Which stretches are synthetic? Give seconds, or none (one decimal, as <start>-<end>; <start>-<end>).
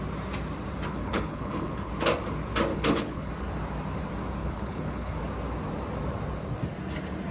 0.9-1.9; 2.7-3.3; 4.4-5.2